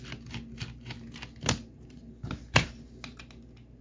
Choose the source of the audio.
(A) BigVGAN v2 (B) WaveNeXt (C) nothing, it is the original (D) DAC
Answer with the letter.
C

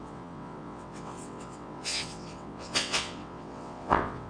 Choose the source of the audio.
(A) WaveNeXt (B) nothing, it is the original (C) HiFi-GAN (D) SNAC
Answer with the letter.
A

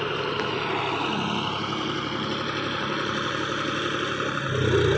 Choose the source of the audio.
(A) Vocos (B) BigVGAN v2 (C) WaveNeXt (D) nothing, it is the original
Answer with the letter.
D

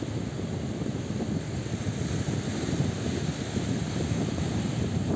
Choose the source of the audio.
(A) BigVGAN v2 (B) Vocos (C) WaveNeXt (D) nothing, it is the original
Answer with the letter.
D